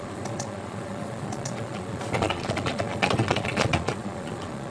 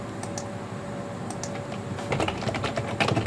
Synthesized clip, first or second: first